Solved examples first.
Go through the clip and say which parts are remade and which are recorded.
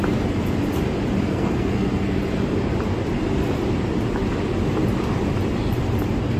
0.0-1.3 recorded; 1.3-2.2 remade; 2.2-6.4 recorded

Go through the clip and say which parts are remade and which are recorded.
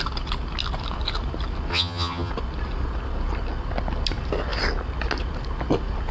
0.0-1.7 recorded; 1.7-2.3 remade; 2.3-6.1 recorded